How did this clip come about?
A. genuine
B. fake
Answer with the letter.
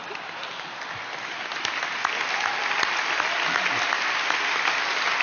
A